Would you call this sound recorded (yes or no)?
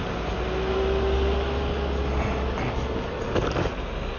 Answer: yes